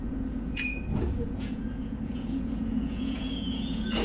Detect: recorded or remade remade